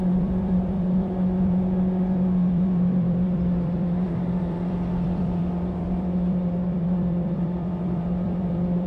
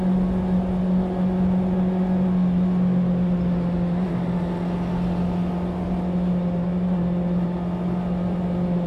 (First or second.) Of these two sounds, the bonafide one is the second